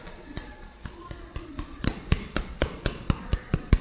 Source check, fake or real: fake